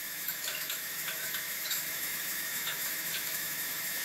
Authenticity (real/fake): fake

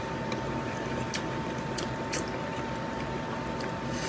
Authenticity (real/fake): real